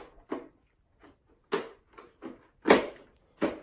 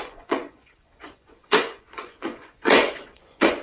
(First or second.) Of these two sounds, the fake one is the second